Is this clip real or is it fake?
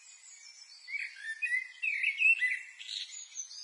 real